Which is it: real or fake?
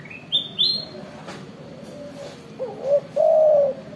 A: real